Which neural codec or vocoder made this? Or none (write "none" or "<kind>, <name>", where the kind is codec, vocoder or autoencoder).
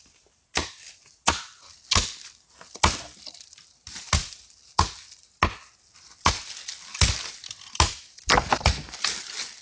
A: none